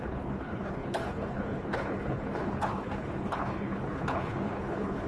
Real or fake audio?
fake